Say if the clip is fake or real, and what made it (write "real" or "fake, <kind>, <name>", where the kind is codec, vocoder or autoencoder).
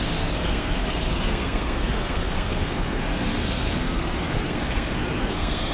fake, codec, SNAC